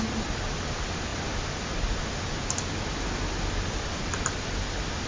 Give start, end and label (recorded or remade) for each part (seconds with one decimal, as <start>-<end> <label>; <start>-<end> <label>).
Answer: 0.0-5.1 recorded